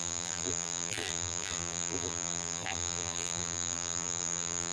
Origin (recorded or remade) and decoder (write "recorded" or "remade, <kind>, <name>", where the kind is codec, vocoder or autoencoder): remade, vocoder, BigVGAN v2